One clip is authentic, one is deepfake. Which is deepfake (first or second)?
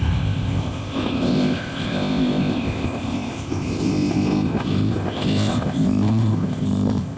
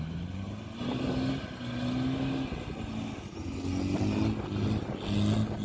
first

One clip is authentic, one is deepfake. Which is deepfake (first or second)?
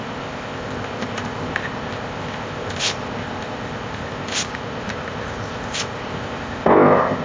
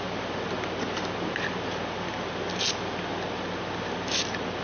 first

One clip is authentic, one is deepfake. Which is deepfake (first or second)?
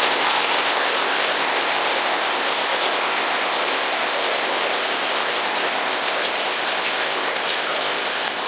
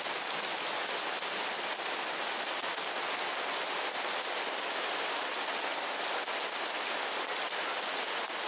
first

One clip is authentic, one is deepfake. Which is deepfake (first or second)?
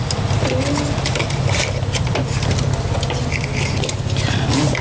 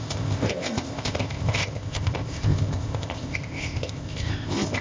second